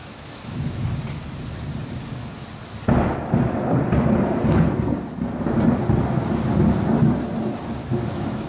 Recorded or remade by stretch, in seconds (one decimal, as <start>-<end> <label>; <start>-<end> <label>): 0.0-1.0 remade; 1.0-7.8 recorded; 7.8-8.5 remade